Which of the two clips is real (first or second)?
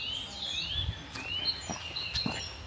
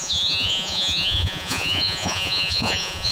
first